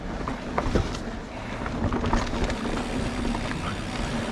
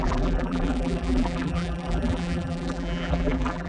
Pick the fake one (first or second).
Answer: second